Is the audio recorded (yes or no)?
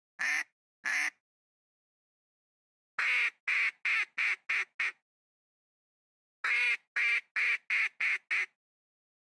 yes